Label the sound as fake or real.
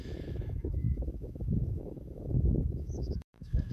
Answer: fake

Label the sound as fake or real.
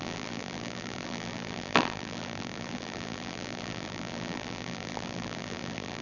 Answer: fake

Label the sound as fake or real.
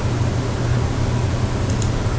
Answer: real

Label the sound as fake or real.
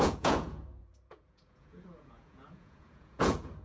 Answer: fake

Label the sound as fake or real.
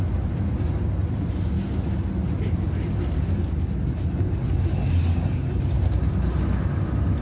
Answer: real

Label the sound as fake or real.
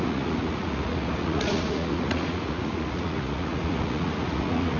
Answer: fake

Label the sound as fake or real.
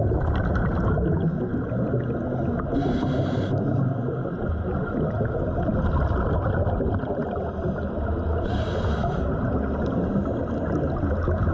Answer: real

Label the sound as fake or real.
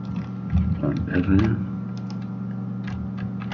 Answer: real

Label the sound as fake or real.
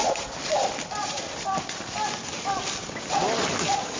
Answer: real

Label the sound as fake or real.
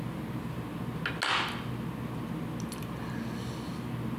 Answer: real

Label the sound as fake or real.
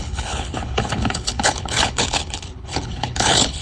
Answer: fake